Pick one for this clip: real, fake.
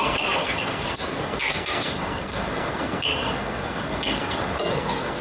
fake